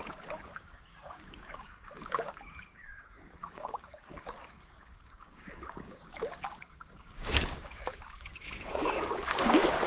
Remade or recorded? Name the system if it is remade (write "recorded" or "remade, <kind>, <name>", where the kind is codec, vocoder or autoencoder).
remade, codec, DAC